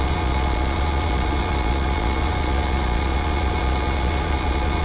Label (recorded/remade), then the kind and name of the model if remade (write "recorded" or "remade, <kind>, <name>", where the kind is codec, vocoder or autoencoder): remade, vocoder, Vocos